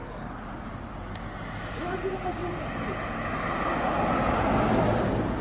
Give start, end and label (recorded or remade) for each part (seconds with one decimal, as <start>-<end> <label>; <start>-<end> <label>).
0.0-5.4 recorded